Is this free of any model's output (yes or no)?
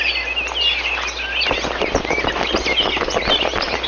yes